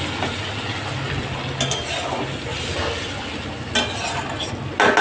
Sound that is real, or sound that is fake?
real